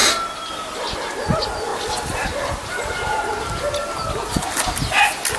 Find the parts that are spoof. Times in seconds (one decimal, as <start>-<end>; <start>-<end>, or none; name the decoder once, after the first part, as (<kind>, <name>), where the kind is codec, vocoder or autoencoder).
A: none